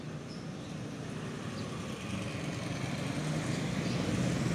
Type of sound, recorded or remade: recorded